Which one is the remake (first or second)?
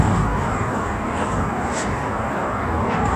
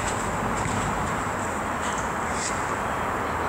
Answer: first